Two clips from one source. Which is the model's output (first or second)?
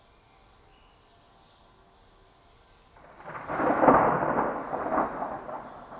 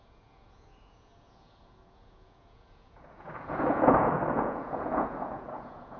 second